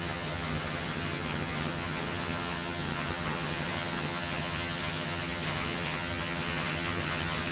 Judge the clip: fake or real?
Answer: fake